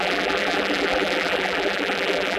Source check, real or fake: fake